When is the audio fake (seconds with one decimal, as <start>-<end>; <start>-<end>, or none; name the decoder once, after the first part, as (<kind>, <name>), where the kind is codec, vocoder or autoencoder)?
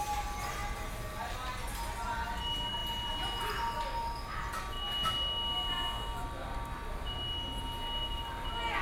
none